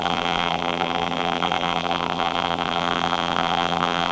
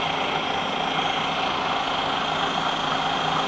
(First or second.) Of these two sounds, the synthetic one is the first